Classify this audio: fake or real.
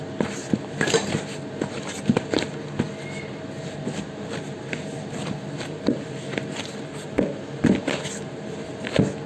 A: real